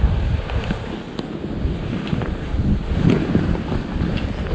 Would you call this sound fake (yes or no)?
no